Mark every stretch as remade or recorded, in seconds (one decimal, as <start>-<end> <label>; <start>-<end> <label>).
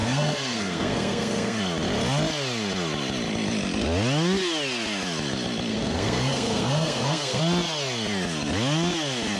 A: 0.0-1.6 remade; 1.6-5.7 recorded; 5.7-7.4 remade; 7.4-9.4 recorded